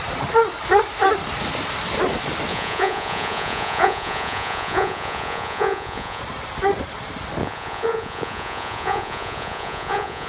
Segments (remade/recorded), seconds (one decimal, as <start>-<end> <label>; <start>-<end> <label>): 0.0-2.5 recorded; 2.5-6.2 remade; 6.2-7.4 recorded; 7.4-10.3 remade